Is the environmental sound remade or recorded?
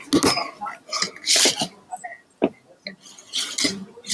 recorded